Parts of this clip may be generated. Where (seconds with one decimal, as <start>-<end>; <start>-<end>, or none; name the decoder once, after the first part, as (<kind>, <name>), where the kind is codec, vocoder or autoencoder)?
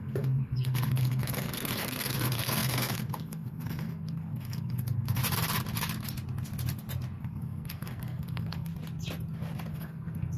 0.0-5.2 (codec, SNAC); 7.2-8.7; 9.7-10.4